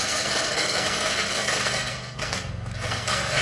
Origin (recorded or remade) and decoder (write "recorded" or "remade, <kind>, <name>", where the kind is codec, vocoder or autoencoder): remade, codec, SNAC